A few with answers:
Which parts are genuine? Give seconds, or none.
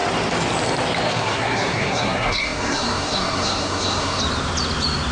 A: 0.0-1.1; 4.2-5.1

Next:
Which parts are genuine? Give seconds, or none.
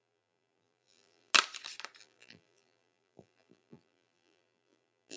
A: 1.3-2.0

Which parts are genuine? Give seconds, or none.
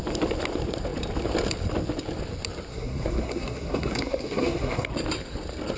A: 0.0-2.7; 4.9-5.8